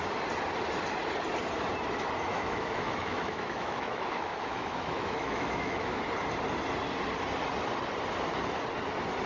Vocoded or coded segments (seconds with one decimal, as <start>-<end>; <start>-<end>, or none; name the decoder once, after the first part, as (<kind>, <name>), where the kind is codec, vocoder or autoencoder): 2.3-6.0 (autoencoder, DAC-VAE)

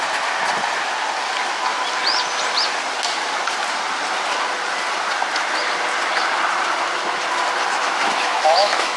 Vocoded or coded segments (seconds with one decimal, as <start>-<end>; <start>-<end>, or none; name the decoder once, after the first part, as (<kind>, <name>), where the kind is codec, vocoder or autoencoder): 7.7-9.0 (autoencoder, DAC-VAE)

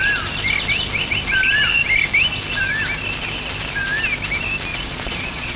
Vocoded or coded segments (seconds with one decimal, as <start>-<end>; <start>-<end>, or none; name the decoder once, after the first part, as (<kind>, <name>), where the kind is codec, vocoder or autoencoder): 4.7-5.6 (vocoder, Vocos)

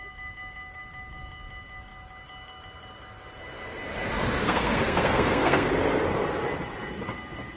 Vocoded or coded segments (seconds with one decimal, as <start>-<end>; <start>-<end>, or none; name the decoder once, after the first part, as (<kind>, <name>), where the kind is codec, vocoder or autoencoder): 4.4-5.7 (codec, SNAC)

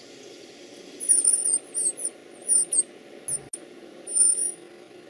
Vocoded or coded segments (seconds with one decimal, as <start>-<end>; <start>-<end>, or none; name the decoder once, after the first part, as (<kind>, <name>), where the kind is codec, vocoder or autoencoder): none

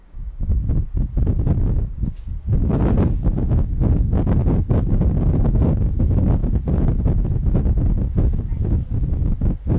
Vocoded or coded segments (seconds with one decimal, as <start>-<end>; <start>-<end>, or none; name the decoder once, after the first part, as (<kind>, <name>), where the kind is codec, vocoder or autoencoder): 0.0-0.6 (codec, DAC); 1.6-4.4; 5.1-6.4